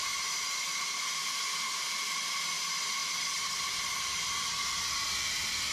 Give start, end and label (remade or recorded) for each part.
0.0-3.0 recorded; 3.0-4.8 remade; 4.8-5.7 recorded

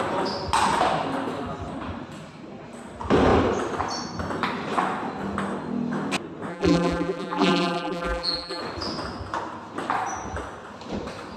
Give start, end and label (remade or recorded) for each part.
0.0-6.5 recorded; 6.5-8.6 remade; 8.6-11.4 recorded

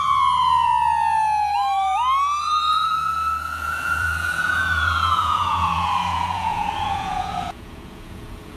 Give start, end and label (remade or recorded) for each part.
0.0-0.7 remade; 0.7-2.4 recorded; 2.4-8.6 remade

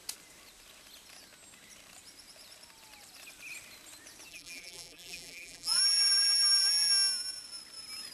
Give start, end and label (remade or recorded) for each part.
0.0-4.3 recorded; 4.3-6.9 remade; 6.9-8.1 recorded

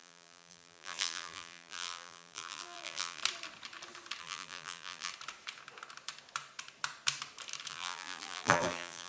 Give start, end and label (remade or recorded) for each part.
0.0-3.2 remade; 3.2-4.2 recorded; 4.2-5.1 remade; 5.1-7.7 recorded; 7.7-9.1 remade

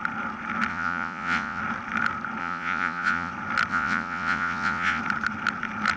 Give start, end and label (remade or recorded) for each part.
0.0-0.7 recorded; 0.7-1.6 remade; 1.6-2.4 recorded; 2.4-3.3 remade; 3.3-3.7 recorded; 3.7-5.0 remade; 5.0-6.0 recorded

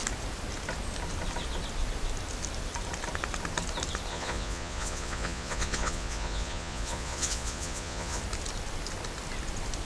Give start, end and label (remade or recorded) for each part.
0.0-4.1 recorded; 4.1-8.2 remade; 8.2-9.8 recorded

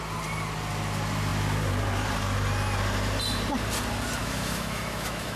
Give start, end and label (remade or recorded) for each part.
0.0-4.2 recorded; 4.2-5.4 remade